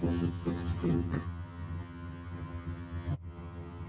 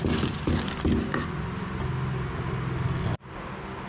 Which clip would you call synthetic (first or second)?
first